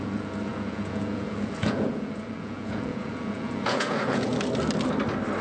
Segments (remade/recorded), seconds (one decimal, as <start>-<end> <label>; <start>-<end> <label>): 0.0-4.3 remade; 4.3-5.4 recorded